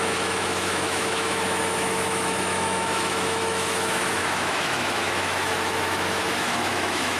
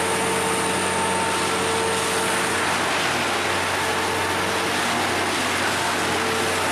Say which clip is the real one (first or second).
second